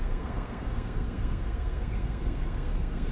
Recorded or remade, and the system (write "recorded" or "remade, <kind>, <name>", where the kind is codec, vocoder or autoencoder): remade, codec, SNAC